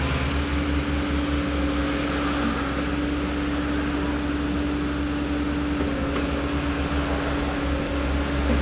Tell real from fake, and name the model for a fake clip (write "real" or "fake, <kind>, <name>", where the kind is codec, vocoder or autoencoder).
real